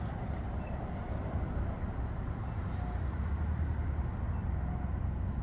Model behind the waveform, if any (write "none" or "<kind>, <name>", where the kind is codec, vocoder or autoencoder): none